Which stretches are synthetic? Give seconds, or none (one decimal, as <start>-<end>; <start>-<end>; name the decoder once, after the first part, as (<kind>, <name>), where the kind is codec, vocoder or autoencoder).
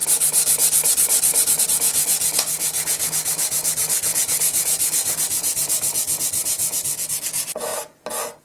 1.6-7.7 (vocoder, Vocos)